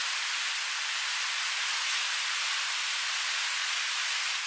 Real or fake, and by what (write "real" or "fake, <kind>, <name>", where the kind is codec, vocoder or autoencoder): real